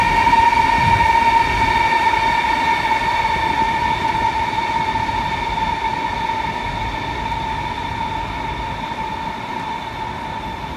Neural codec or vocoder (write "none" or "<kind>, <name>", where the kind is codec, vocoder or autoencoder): none